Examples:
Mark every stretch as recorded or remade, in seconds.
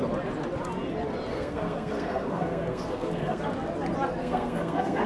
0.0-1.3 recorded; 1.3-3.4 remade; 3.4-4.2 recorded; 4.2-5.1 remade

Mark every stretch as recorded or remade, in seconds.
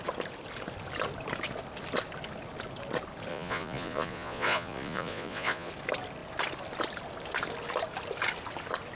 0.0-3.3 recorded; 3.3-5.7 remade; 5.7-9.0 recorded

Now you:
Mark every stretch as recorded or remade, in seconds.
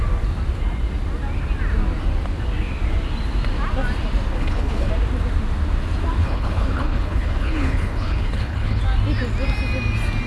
0.0-4.3 recorded; 4.3-4.9 remade; 4.9-6.2 recorded; 6.2-8.8 remade; 8.8-10.3 recorded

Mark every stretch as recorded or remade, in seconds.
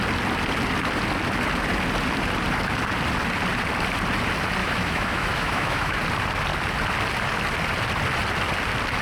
0.0-4.6 recorded; 4.6-6.0 remade; 6.0-9.0 recorded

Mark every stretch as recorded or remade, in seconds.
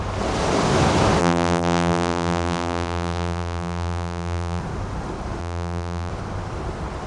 0.0-1.2 recorded; 1.2-4.6 remade; 4.6-5.4 recorded; 5.4-6.1 remade; 6.1-7.1 recorded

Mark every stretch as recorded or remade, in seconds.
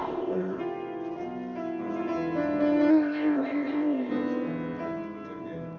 0.0-0.6 remade; 0.6-2.9 recorded; 2.9-4.1 remade; 4.1-5.8 recorded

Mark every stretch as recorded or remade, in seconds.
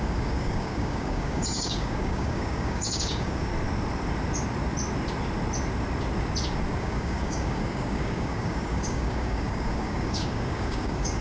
0.0-3.5 remade; 3.5-6.8 recorded; 6.8-11.2 remade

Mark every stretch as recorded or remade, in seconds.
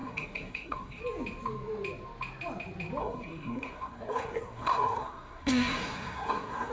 0.0-1.0 remade; 1.0-3.0 recorded; 3.0-6.7 remade